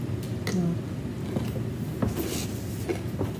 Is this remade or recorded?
recorded